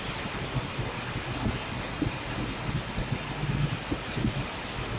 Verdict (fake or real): real